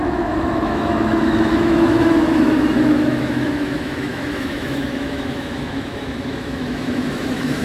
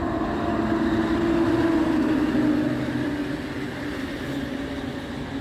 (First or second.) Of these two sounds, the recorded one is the second